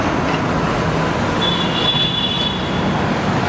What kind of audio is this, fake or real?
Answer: real